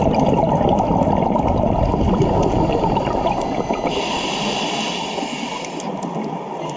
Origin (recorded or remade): remade